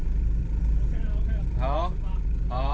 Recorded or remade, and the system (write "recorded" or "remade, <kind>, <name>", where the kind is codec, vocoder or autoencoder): remade, vocoder, BigVGAN v2